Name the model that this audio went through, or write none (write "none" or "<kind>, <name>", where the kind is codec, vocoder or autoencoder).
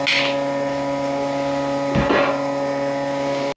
none